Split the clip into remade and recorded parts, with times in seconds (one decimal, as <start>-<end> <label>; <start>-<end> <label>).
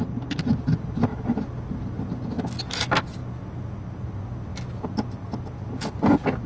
0.0-6.5 recorded